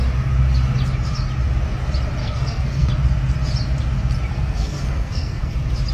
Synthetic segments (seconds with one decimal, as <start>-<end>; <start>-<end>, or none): 2.2-2.9; 4.3-5.5